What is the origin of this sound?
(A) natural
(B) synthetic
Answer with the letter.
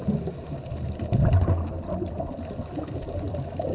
A